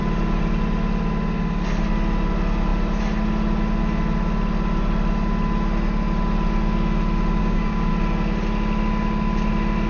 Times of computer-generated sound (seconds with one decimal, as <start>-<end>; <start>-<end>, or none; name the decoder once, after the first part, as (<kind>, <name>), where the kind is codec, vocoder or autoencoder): 7.4-7.9 (codec, DAC)